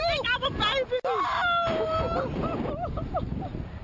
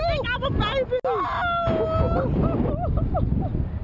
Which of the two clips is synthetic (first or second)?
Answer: first